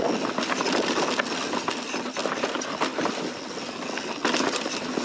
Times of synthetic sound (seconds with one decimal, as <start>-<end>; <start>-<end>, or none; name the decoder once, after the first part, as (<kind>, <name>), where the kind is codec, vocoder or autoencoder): none